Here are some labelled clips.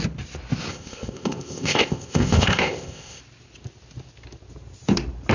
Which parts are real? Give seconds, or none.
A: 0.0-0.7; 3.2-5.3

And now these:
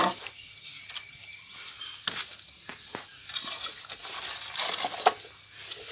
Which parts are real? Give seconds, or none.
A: 0.0-5.9

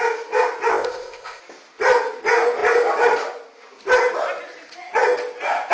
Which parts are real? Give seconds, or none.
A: 0.0-0.7; 1.4-5.7

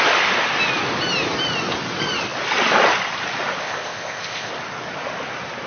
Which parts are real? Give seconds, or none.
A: 0.0-3.6; 4.5-5.7

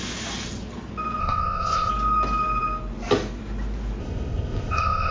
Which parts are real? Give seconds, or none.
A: 0.0-1.2; 1.9-4.0